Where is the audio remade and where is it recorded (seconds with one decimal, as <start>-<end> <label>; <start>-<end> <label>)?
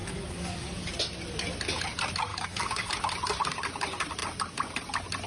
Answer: 0.0-0.9 remade; 0.9-2.3 recorded; 2.3-2.9 remade; 2.9-5.3 recorded